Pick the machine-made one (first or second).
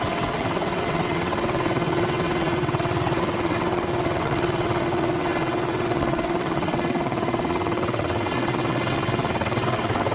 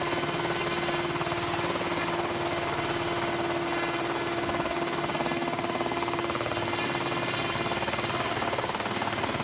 first